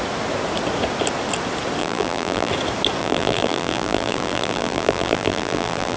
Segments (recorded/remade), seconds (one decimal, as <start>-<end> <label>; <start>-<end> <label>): 0.0-1.8 recorded; 1.8-2.5 remade; 2.5-3.0 recorded; 3.0-6.0 remade